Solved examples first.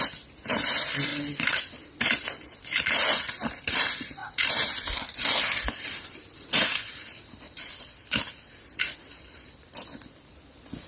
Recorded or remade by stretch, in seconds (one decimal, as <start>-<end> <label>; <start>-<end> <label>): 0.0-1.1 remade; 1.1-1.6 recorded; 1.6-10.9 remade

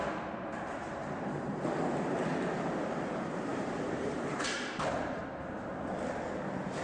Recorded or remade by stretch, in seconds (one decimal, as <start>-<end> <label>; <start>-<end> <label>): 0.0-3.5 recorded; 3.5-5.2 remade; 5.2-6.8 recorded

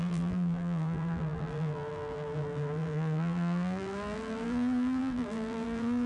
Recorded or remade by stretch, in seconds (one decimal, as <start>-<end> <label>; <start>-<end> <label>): 0.0-6.1 remade

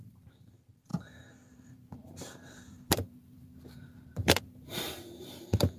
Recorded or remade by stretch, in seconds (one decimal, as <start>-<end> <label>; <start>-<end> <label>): 0.0-5.8 remade

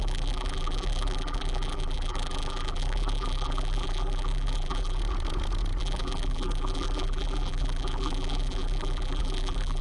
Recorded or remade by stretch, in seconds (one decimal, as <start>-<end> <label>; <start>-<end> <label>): 0.0-5.0 remade; 5.0-5.8 recorded; 5.8-9.8 remade

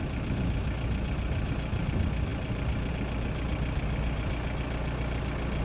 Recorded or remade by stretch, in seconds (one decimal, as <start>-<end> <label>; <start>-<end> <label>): 0.0-2.3 recorded; 2.3-2.9 remade; 2.9-5.6 recorded